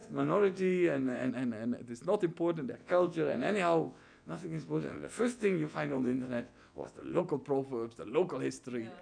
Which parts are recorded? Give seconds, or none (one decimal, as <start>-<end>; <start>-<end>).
1.3-2.8; 7.2-9.0